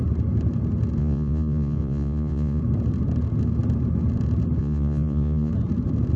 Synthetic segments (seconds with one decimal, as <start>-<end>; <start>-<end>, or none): 1.0-2.6; 4.6-5.5